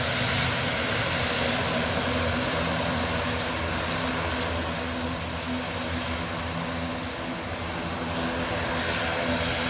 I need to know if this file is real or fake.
real